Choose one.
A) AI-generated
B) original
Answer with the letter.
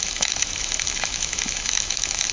A